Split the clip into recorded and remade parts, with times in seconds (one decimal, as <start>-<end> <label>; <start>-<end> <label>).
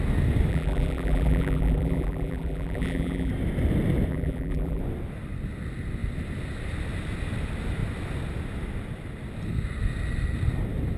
0.0-0.5 recorded; 0.5-3.3 remade; 3.3-4.1 recorded; 4.1-4.8 remade; 4.8-11.0 recorded